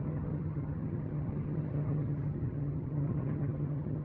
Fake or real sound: fake